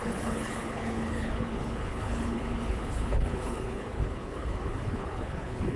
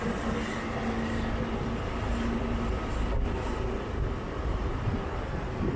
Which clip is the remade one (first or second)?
first